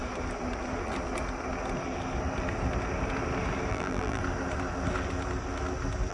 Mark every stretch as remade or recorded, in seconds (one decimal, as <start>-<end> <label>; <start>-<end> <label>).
0.0-3.7 recorded; 3.7-4.2 remade; 4.2-6.1 recorded